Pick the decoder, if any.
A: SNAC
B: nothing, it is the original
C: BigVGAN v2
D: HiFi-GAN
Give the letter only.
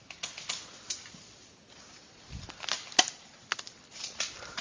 B